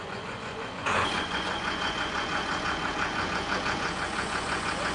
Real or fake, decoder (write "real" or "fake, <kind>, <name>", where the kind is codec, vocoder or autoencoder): fake, vocoder, Vocos